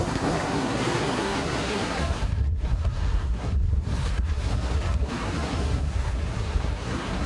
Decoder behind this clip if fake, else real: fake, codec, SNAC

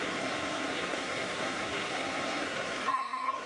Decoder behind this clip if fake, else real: fake, codec, SNAC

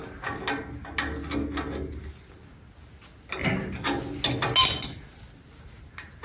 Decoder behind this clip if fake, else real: real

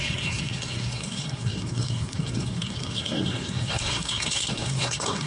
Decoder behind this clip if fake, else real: fake, codec, SNAC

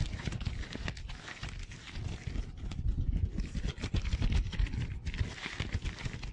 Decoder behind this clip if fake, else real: real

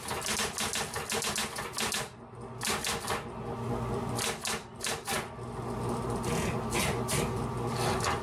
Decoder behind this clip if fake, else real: real